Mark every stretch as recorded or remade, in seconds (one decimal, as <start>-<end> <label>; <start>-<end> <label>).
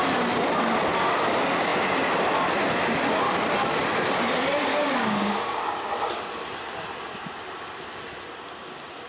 0.0-4.7 recorded; 4.7-5.9 remade; 5.9-9.1 recorded